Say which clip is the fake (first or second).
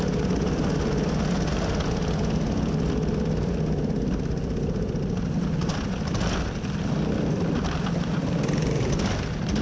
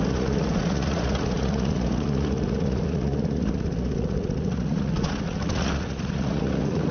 second